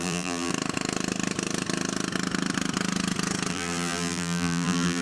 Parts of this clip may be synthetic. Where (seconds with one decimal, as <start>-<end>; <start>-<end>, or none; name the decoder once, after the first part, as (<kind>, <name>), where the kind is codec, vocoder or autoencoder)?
0.0-0.5 (vocoder, BigVGAN v2); 3.5-5.0